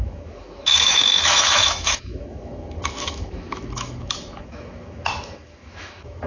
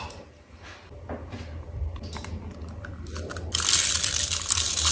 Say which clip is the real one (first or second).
second